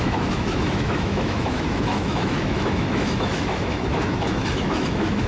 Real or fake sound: fake